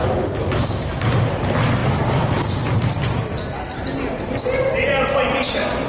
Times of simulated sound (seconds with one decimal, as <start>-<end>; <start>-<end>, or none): none